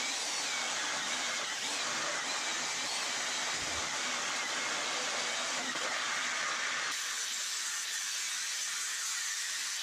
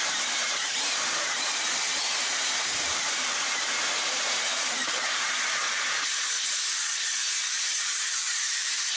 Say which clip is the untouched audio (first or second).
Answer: first